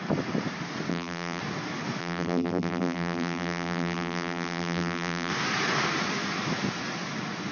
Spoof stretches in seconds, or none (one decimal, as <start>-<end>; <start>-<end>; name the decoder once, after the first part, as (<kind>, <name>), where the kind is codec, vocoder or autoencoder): 0.9-1.4 (vocoder, BigVGAN v2); 2.0-5.3